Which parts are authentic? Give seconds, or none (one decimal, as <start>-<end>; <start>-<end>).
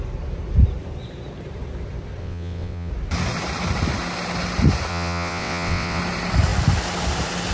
0.0-2.2; 2.9-4.9; 6.0-7.5